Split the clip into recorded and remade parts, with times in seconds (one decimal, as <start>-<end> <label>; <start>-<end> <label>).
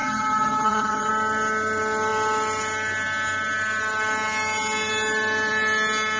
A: 0.0-1.1 remade; 1.1-6.2 recorded